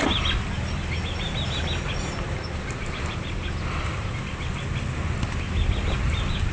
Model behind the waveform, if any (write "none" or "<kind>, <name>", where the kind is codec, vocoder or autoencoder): none